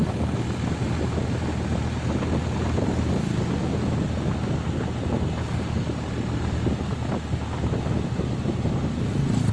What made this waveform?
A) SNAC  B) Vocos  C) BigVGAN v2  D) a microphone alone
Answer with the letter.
D